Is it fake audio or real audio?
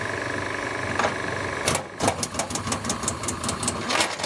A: real